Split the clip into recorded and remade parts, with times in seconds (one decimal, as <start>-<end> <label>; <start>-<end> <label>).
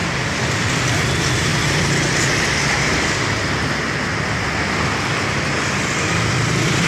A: 0.0-1.5 remade; 1.5-5.6 recorded; 5.6-6.9 remade